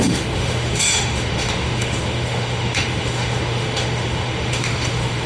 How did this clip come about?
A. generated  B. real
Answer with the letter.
A